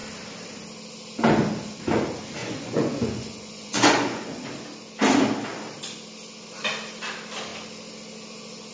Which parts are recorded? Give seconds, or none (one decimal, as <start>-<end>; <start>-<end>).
0.0-2.4; 4.4-8.7